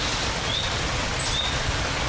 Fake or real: real